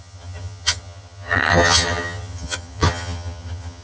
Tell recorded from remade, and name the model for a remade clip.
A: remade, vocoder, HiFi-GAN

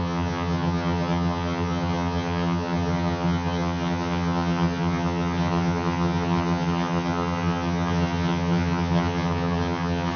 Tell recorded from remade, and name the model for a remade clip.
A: remade, vocoder, HiFi-GAN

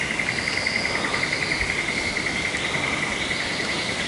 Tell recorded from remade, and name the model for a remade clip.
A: recorded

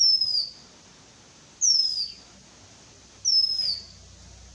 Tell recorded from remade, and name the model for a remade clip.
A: recorded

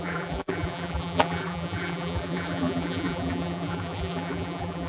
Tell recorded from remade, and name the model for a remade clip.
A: remade, vocoder, BigVGAN v2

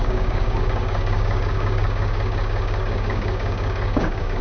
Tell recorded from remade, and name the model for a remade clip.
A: remade, codec, DAC